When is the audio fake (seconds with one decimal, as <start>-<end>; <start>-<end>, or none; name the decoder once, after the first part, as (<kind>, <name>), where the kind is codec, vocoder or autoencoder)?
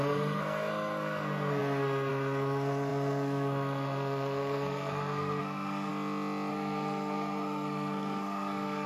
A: 0.0-5.9 (codec, SNAC); 6.5-8.9